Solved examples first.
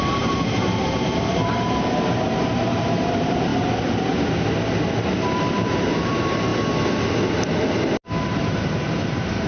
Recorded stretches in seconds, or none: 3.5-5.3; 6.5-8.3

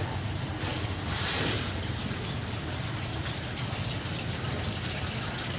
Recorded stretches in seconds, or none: 0.0-0.7; 2.4-5.6

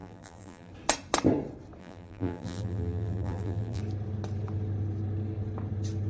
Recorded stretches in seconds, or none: 0.7-1.8; 3.8-6.1

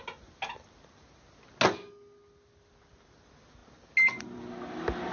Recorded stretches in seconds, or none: 0.0-5.1

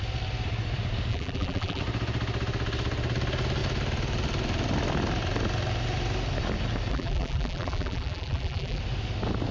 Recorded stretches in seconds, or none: 0.0-1.1; 1.8-6.9; 8.8-9.5

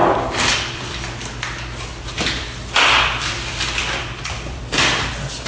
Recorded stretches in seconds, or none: 1.0-1.9; 5.1-5.5

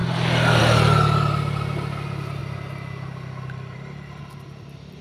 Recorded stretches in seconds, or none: 0.0-5.0